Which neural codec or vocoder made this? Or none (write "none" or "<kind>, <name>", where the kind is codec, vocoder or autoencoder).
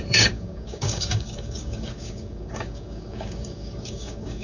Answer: codec, DAC